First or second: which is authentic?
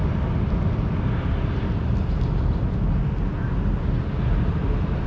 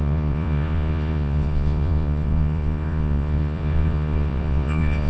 first